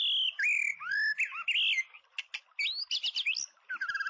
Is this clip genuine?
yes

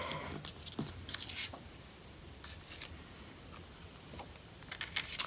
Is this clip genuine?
yes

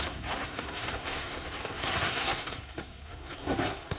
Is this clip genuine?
no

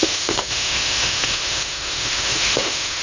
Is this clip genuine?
no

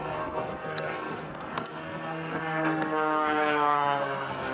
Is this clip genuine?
no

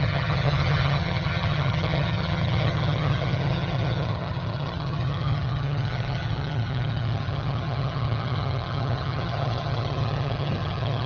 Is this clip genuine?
no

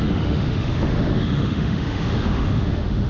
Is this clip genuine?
no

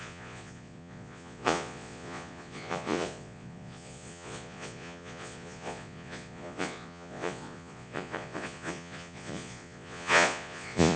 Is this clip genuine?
no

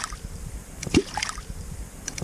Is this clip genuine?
no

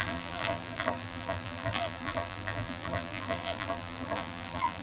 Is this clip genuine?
no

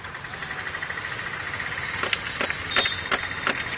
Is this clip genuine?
yes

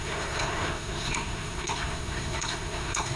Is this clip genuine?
no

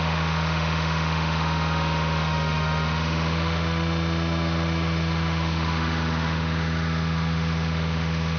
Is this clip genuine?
no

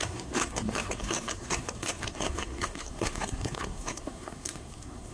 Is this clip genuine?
no